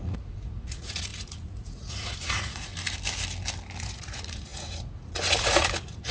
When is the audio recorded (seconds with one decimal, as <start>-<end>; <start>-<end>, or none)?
2.7-3.8

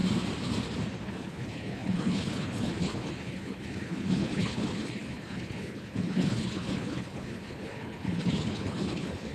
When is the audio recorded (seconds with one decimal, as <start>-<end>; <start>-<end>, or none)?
0.0-1.0